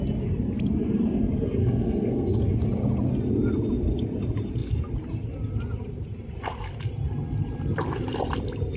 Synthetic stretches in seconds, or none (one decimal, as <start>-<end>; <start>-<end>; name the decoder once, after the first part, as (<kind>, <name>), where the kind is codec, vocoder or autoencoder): 1.6-2.5 (codec, SNAC)